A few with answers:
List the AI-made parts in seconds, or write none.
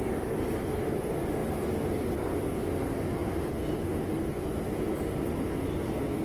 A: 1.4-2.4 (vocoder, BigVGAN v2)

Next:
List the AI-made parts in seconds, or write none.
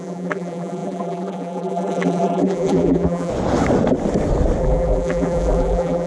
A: 0.0-3.3 (vocoder, BigVGAN v2); 4.6-6.1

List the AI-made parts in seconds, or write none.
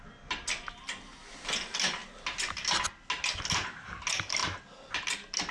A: none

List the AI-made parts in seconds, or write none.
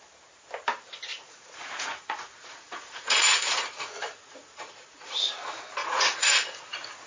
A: 1.1-5.3 (vocoder, Vocos); 5.8-7.1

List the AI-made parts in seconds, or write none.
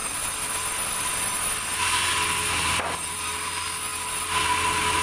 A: none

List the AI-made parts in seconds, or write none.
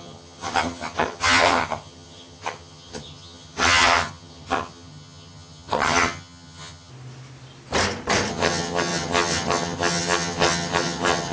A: 0.0-6.9 (vocoder, HiFi-GAN); 8.3-11.3